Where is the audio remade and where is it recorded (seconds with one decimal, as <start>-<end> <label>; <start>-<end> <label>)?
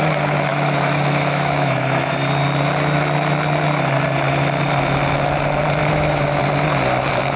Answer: 0.0-0.5 recorded; 0.5-2.1 remade; 2.1-5.8 recorded; 5.8-6.4 remade; 6.4-7.4 recorded